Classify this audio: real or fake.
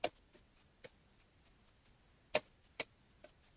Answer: real